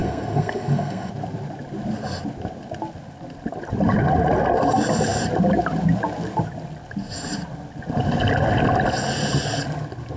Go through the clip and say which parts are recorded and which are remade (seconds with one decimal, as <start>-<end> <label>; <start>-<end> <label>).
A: 0.0-1.1 remade; 1.1-10.2 recorded